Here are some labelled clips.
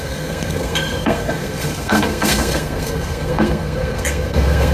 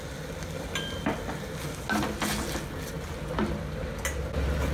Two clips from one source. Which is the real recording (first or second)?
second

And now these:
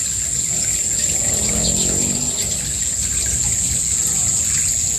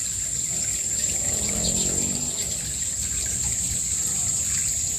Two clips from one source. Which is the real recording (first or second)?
first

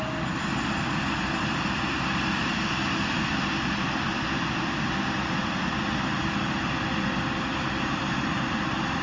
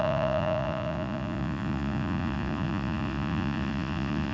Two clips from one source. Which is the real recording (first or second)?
first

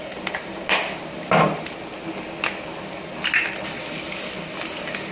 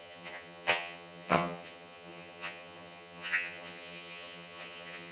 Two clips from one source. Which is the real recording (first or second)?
first